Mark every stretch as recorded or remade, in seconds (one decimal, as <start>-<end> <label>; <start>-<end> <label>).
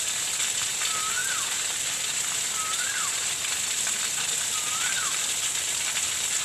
0.0-6.4 recorded